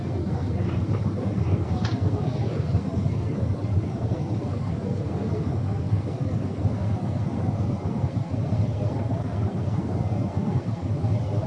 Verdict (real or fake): fake